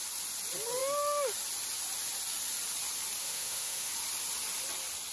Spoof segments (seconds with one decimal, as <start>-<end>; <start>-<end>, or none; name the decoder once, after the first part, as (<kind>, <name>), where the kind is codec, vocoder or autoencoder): 3.2-3.9 (autoencoder, DAC-VAE)